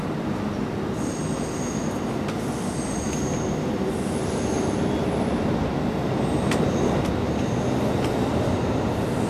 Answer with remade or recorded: recorded